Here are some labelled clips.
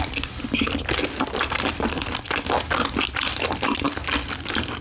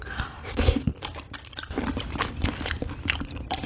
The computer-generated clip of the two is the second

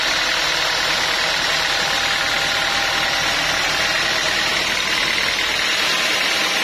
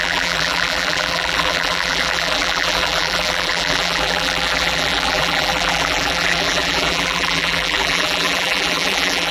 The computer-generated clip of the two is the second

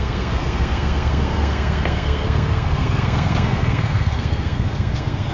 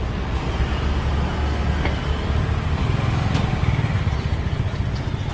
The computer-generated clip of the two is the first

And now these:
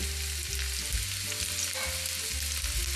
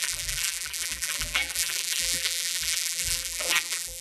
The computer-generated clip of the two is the second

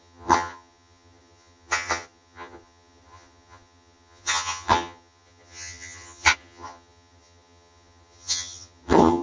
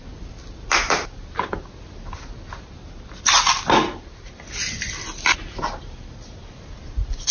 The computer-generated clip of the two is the first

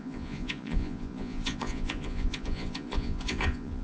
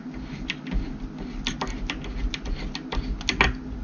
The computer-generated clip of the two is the first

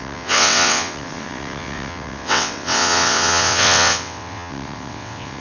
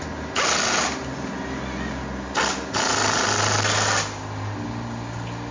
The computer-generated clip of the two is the first